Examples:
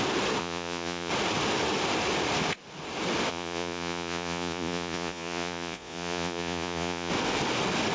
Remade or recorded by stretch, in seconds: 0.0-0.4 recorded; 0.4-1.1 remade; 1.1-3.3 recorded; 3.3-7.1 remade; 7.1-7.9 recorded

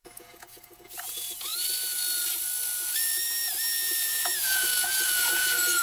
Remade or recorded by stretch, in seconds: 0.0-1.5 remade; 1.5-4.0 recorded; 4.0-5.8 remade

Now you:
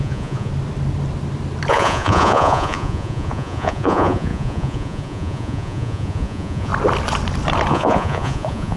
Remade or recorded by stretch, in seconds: 0.0-0.5 remade; 0.5-1.7 recorded; 1.7-6.7 remade; 6.7-7.7 recorded; 7.7-8.8 remade